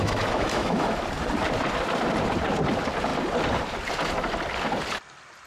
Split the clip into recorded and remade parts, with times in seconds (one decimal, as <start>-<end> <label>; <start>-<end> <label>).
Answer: 0.0-1.0 remade; 1.0-5.5 recorded